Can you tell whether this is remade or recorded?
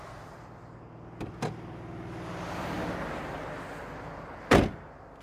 recorded